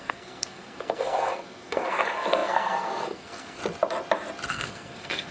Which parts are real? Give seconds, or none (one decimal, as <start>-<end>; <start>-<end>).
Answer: 3.6-4.5